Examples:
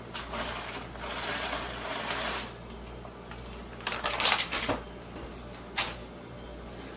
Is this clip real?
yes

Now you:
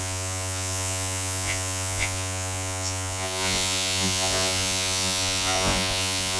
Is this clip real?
no